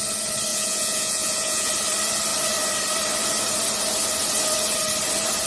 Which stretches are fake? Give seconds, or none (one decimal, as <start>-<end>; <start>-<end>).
0.5-1.7